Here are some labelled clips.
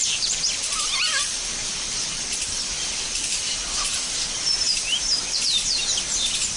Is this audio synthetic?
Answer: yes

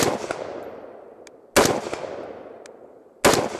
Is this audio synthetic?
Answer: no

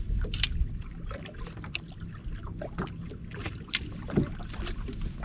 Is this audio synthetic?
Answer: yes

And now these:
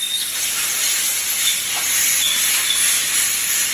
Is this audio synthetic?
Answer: no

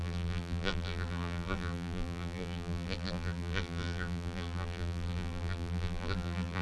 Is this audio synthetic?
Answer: yes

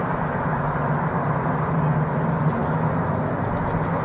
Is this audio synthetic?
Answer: no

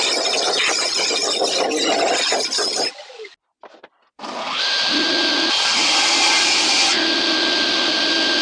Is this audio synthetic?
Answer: no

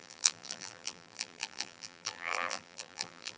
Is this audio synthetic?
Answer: yes